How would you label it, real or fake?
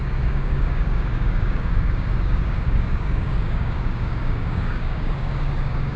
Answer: fake